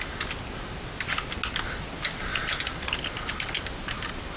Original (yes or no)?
yes